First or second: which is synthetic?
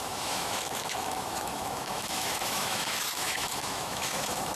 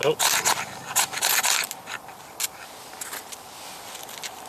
first